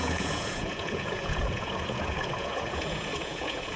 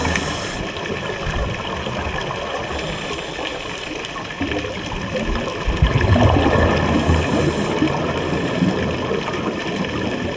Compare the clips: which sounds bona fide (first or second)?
second